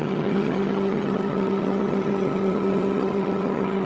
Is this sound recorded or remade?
remade